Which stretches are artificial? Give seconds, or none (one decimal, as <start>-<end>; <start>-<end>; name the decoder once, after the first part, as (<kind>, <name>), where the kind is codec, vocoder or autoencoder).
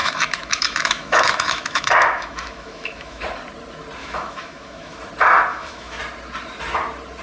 0.0-3.2 (autoencoder, DAC-VAE); 4.0-5.0; 5.5-6.0